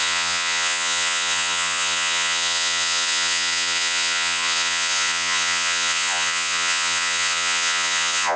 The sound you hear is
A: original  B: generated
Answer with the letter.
B